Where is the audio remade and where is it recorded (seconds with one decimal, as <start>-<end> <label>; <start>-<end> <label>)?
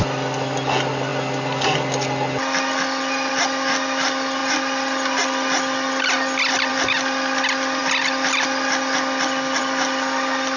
0.0-10.6 recorded